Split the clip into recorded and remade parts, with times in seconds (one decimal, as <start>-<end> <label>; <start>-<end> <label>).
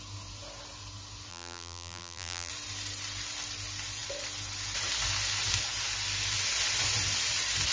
0.0-1.3 recorded; 1.3-2.5 remade; 2.5-7.7 recorded